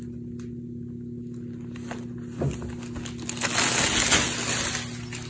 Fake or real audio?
real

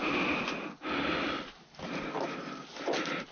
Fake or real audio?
real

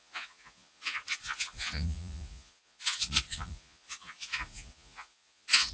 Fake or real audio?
fake